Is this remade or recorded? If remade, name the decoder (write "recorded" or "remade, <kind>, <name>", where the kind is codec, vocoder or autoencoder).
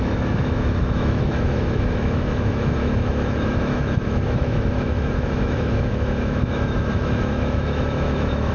remade, autoencoder, DAC-VAE